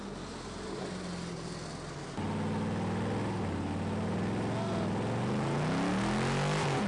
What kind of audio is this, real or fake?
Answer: real